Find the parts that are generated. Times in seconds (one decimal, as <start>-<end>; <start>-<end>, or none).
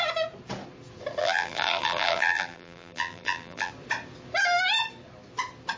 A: 1.2-3.7